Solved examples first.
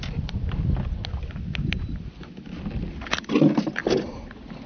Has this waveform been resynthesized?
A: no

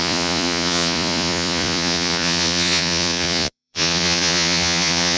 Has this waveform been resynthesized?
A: yes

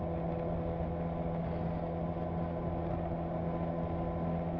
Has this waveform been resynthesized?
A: no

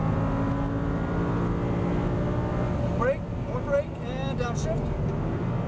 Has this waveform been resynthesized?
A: no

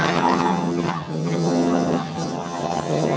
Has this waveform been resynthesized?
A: yes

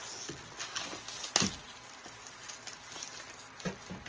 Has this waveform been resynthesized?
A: no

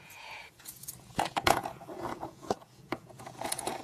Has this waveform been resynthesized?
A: yes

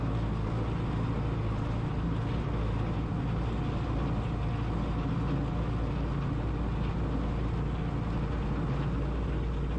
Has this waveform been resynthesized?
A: no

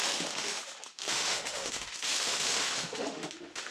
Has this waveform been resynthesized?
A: yes